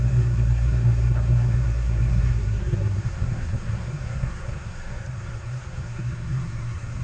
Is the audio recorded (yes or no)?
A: no